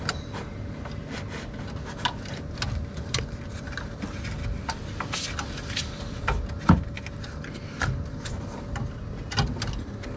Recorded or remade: recorded